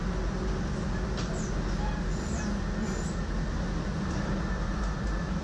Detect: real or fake real